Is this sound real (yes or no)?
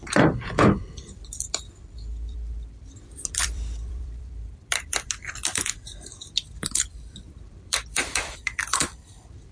no